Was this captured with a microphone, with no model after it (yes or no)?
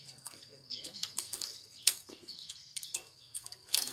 no